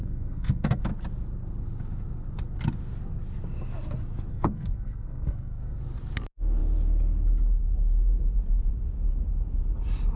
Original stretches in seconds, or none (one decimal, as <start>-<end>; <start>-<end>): 0.8-4.3; 5.8-10.2